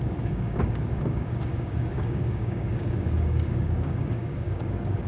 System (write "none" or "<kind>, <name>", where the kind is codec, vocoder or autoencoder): codec, DAC